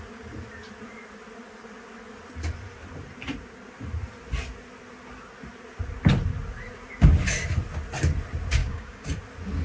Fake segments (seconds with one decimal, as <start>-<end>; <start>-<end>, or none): 8.6-9.2